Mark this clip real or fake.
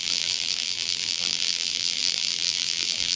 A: fake